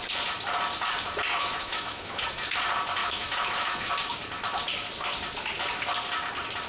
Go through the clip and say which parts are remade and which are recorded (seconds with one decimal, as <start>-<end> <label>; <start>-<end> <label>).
0.0-1.3 recorded; 1.3-2.2 remade; 2.2-3.0 recorded; 3.0-3.9 remade; 3.9-6.7 recorded